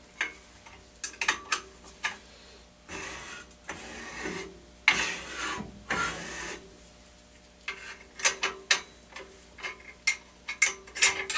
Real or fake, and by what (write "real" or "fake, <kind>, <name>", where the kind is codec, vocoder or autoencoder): real